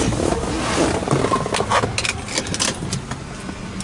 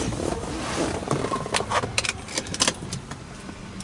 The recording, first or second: first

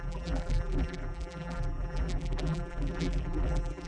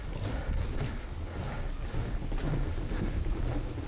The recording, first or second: second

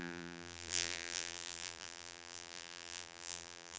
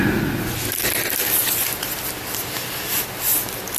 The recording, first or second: second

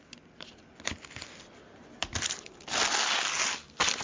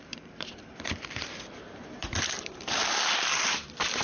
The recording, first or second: first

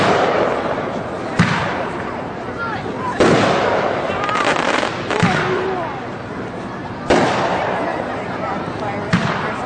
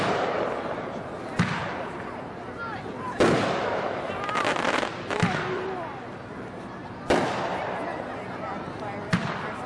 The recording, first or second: second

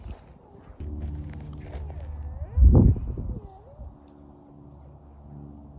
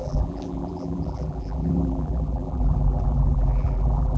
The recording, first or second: first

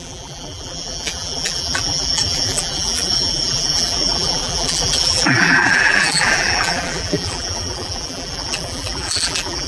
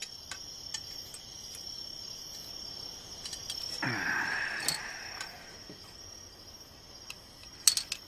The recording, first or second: second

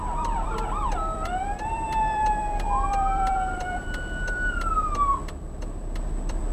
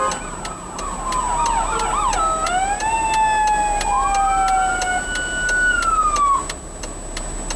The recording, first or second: second